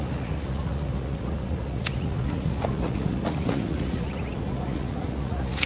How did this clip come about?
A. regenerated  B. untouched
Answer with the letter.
A